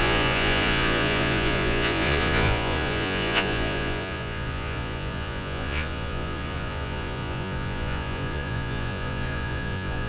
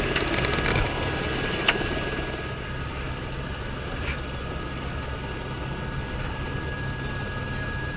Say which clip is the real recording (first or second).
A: second